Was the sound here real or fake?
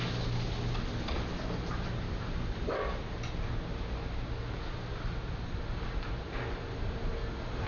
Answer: real